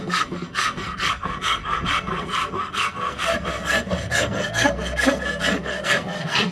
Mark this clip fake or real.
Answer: fake